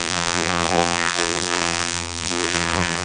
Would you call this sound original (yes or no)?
no